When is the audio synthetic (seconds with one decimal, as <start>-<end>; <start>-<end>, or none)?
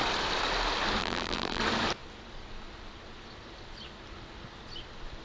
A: 1.0-1.6